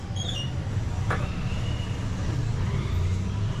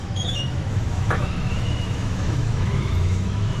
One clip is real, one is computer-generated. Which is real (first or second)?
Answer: first